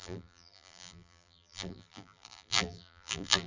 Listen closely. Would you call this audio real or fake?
fake